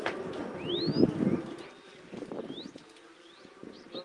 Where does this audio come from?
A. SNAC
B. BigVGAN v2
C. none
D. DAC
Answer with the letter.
C